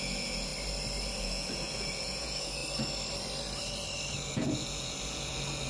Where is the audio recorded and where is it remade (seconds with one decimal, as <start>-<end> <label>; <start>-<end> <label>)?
0.0-0.5 remade; 0.5-1.2 recorded; 1.2-2.6 remade; 2.6-4.1 recorded; 4.1-5.7 remade